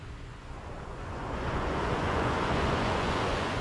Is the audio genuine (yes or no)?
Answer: no